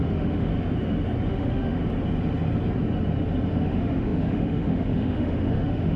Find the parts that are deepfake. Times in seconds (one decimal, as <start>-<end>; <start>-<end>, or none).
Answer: 0.0-0.5; 1.3-1.8; 3.5-6.0